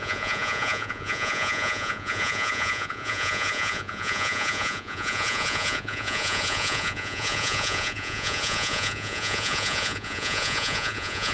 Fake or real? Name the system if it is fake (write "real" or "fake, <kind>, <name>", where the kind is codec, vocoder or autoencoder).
fake, vocoder, Vocos